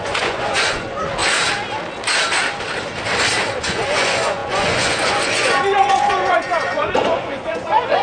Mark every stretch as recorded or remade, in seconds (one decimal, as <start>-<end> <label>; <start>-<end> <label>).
0.0-1.2 remade; 1.2-3.6 recorded; 3.6-8.0 remade